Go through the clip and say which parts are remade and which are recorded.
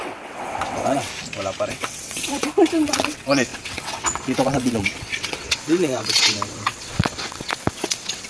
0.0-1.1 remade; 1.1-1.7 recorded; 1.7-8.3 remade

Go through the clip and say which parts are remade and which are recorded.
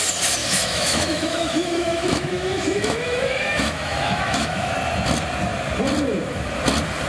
0.0-0.4 recorded; 0.4-4.7 remade; 4.7-7.1 recorded